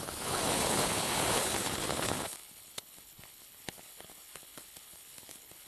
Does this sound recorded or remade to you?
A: remade